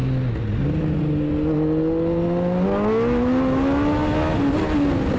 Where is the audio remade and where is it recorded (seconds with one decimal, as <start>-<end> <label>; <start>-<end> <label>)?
0.0-5.2 recorded